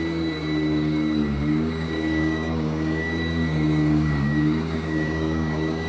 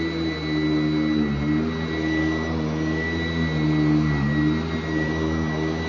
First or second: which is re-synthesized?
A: first